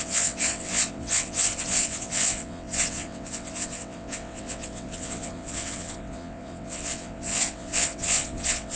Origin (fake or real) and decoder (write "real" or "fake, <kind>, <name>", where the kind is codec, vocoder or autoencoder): fake, vocoder, WaveNeXt